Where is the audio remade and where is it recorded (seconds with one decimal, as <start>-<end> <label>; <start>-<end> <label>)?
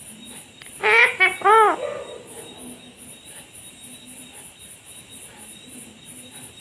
0.0-6.6 recorded